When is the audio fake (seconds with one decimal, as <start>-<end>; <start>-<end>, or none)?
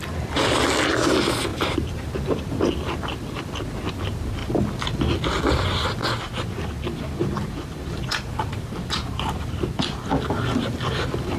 1.5-2.4